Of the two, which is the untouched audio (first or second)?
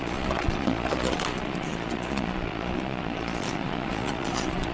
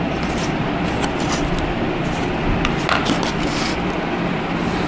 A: second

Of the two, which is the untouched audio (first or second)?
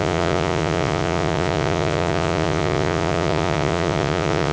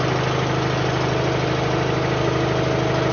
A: second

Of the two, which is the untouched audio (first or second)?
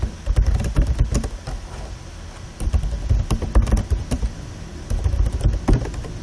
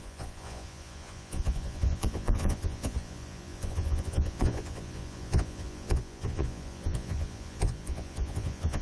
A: first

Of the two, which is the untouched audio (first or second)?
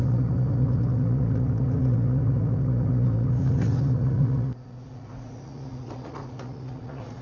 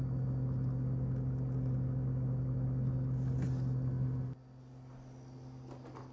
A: second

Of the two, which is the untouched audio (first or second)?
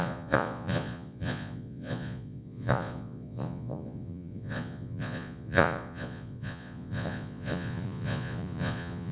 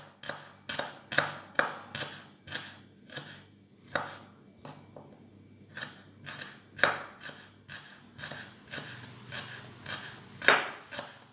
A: second